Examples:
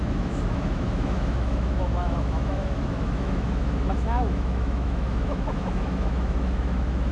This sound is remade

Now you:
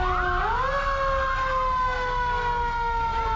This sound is recorded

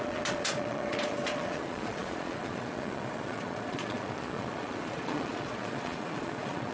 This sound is remade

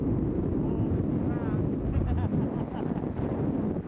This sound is recorded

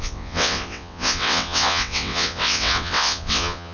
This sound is remade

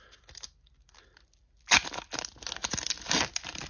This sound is recorded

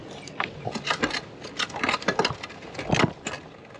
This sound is recorded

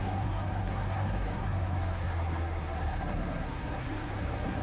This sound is remade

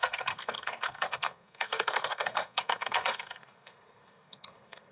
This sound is remade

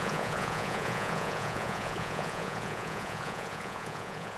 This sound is remade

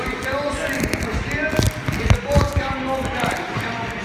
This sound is recorded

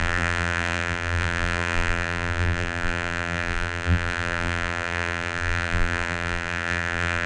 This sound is remade